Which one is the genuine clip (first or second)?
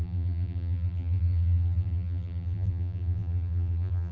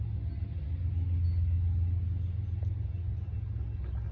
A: second